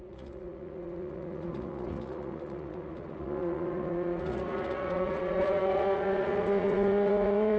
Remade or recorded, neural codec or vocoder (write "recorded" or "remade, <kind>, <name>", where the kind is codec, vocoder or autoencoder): remade, vocoder, Vocos